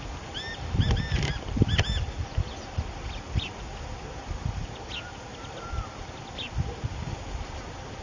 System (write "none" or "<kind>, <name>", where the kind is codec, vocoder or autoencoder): none